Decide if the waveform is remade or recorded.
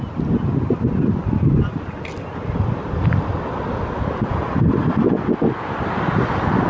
recorded